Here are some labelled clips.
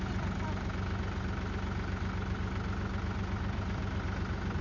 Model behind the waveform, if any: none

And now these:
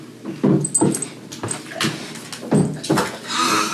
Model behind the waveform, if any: none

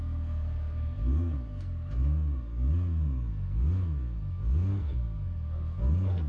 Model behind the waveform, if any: codec, SNAC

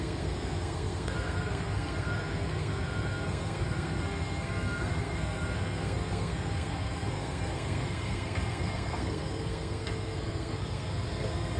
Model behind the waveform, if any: codec, SNAC